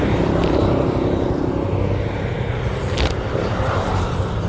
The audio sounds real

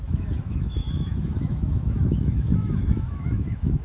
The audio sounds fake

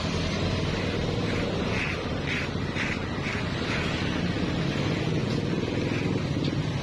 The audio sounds real